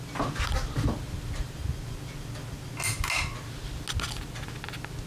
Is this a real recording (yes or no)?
yes